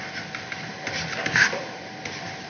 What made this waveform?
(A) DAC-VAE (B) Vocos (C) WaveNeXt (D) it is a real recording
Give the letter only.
D